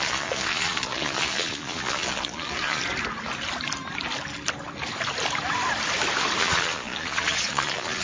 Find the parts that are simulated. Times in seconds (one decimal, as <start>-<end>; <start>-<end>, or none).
0.0-2.8; 6.4-8.0